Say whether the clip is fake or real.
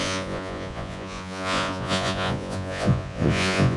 fake